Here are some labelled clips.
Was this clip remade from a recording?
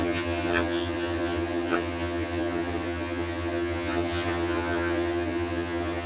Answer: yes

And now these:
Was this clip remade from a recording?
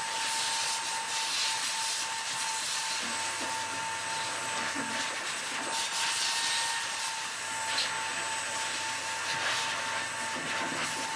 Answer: no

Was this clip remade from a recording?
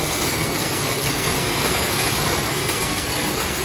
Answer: yes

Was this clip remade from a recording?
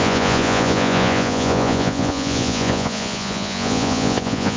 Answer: yes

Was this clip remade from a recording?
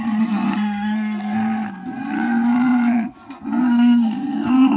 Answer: yes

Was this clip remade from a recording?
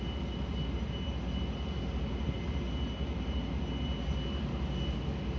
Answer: no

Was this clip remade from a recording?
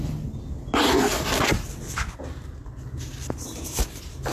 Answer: no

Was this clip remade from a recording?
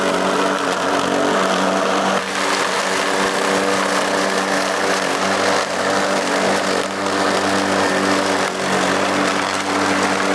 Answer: no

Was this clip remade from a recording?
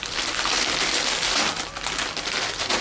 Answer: yes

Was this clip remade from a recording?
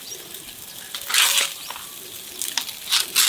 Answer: no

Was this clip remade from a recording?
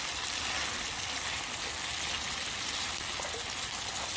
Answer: no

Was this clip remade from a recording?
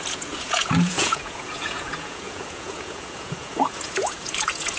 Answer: yes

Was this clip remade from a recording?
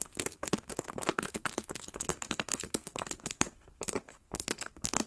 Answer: yes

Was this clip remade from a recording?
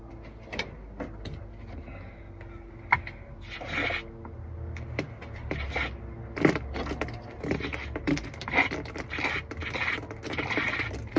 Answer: no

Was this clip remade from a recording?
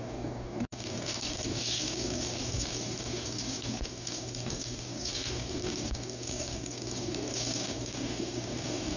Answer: yes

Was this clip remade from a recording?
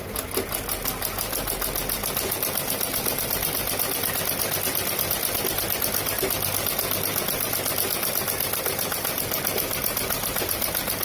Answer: no